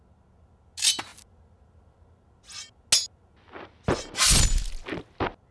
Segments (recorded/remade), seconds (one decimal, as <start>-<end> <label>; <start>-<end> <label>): 0.0-5.5 recorded